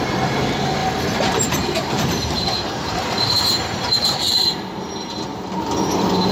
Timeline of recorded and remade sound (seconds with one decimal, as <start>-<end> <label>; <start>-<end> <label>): 0.0-0.8 recorded; 0.8-4.6 remade; 4.6-6.3 recorded